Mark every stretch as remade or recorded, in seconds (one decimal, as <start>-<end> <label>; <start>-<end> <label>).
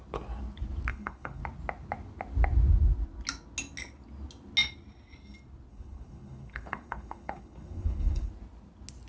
0.0-0.9 recorded; 0.9-1.4 remade; 1.4-5.7 recorded; 5.7-8.3 remade; 8.3-9.1 recorded